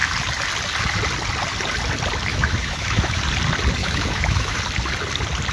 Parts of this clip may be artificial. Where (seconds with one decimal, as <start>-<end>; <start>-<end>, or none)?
2.3-3.2; 3.8-4.6